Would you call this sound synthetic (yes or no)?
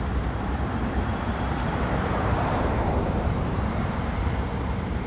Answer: yes